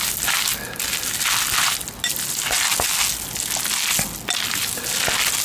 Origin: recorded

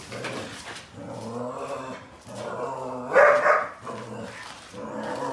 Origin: recorded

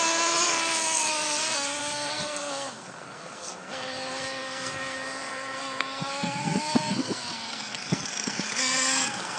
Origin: remade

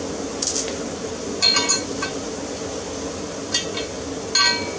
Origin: recorded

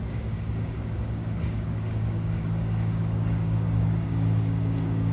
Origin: remade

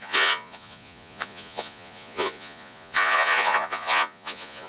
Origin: remade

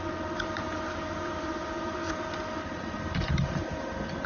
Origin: remade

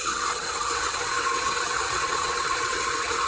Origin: remade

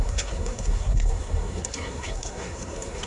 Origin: remade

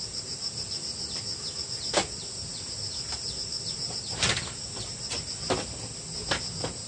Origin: recorded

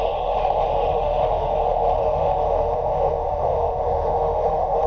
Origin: remade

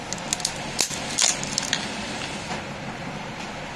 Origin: recorded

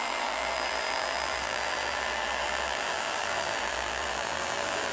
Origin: remade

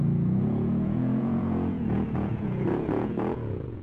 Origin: remade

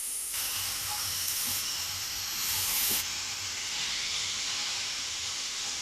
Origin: remade